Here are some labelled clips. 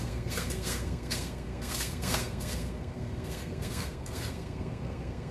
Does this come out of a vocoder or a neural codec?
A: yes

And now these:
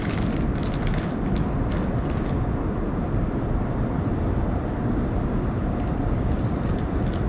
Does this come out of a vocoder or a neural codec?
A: no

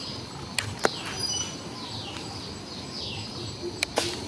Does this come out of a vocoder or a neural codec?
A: no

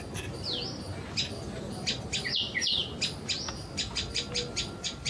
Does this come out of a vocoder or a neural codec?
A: no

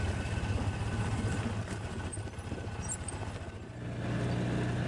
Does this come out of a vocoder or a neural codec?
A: no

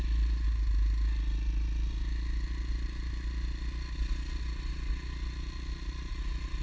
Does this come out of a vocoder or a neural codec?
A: no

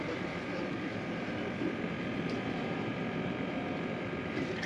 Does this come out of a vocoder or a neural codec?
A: yes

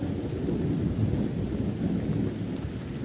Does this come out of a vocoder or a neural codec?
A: no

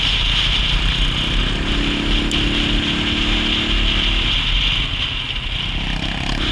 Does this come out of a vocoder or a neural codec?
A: no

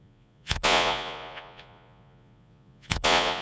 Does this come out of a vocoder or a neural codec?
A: yes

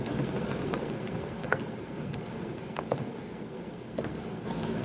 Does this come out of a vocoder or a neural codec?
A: yes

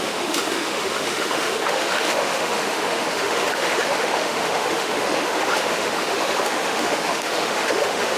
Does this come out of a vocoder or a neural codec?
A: yes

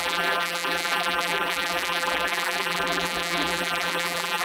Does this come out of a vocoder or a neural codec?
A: yes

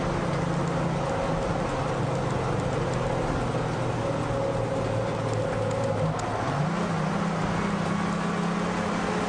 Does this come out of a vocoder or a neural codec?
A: no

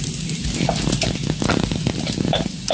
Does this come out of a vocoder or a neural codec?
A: no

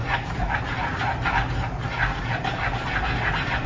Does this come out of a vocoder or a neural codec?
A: no